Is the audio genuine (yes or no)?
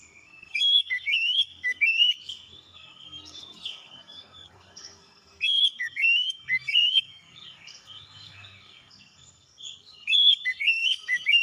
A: no